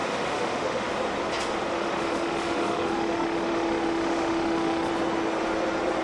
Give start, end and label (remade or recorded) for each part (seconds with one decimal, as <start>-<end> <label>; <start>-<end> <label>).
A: 0.0-0.9 remade; 0.9-1.7 recorded; 1.7-4.9 remade; 4.9-6.0 recorded